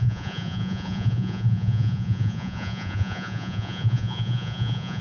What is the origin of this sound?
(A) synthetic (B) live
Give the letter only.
A